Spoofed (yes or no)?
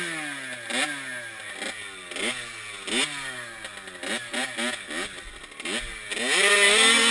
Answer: no